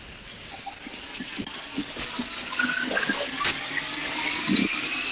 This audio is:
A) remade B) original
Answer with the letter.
B